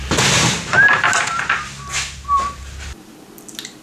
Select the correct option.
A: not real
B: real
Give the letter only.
B